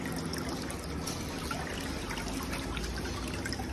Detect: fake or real real